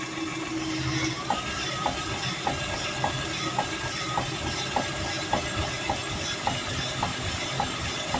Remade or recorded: recorded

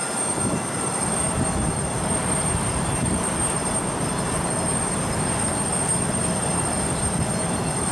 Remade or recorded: recorded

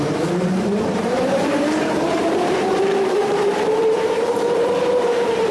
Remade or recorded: remade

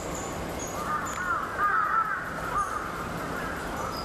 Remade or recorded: remade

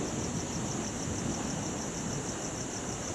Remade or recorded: recorded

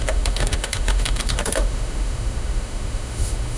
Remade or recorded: remade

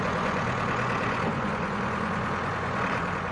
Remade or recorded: remade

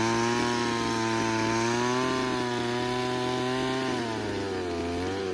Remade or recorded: recorded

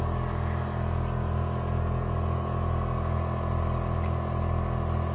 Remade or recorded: recorded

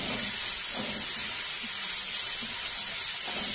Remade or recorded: recorded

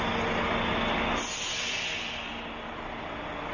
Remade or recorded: recorded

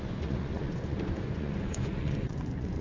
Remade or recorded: remade